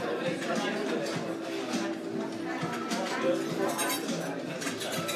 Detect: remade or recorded recorded